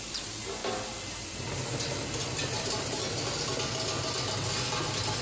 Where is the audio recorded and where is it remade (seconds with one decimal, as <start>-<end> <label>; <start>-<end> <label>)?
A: 0.0-0.6 remade; 0.6-2.5 recorded; 2.5-3.0 remade; 3.0-5.2 recorded